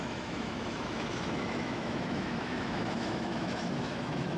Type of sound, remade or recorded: remade